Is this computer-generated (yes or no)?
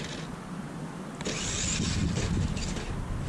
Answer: no